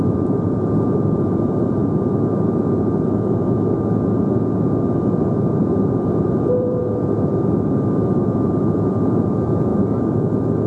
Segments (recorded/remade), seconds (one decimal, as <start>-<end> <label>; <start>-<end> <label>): 0.0-1.8 remade; 1.8-6.1 recorded; 6.1-6.8 remade; 6.8-8.2 recorded; 8.2-9.7 remade; 9.7-10.7 recorded